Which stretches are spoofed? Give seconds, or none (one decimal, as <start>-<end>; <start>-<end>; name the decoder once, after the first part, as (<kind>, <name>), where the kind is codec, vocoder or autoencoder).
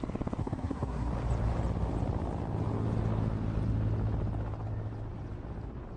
0.4-1.1 (codec, SNAC)